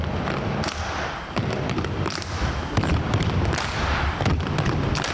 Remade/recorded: remade